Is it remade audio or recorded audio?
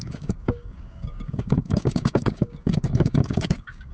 remade